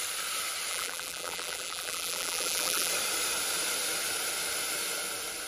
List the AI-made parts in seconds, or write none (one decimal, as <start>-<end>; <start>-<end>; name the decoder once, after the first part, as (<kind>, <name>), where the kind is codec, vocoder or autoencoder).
0.7-2.9 (vocoder, BigVGAN v2)